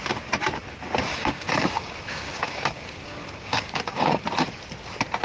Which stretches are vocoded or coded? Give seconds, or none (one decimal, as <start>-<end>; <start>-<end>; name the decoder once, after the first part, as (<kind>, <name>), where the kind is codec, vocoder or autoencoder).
1.1-4.2 (codec, DAC)